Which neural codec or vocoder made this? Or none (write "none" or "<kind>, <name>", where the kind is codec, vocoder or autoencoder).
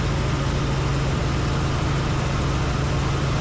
none